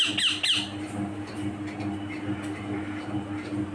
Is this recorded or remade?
recorded